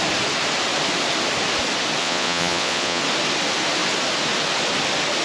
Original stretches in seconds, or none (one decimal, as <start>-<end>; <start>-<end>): 0.0-2.0; 3.0-5.2